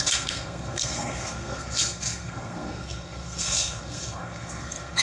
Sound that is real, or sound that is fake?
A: fake